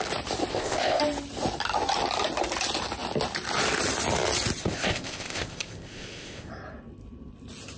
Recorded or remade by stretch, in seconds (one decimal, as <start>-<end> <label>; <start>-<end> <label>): 0.0-0.5 recorded; 0.5-1.0 remade; 1.0-4.6 recorded; 4.6-6.5 remade; 6.5-7.8 recorded